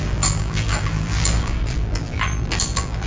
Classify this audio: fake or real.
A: fake